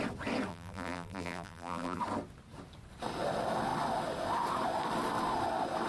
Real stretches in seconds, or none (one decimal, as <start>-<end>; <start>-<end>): 0.0-0.5; 2.0-5.9